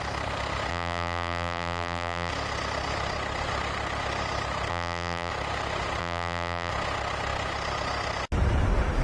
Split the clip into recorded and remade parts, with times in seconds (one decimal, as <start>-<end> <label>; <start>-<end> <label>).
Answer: 0.0-0.7 recorded; 0.7-2.3 remade; 2.3-4.7 recorded; 4.7-5.3 remade; 5.3-6.0 recorded; 6.0-6.7 remade; 6.7-9.0 recorded